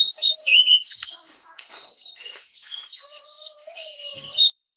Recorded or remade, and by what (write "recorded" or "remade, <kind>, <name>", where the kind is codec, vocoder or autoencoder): remade, codec, SNAC